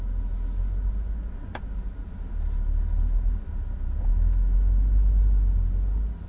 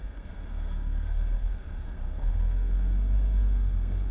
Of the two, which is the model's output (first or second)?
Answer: second